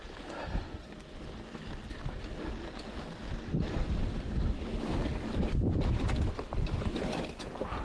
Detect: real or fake real